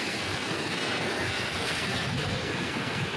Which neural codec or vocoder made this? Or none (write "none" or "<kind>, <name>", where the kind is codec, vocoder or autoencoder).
codec, SNAC